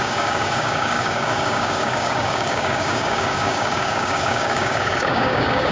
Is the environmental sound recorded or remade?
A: remade